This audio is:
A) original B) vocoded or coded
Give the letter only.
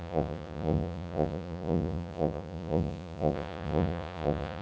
B